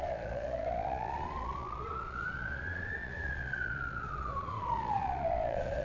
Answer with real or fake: fake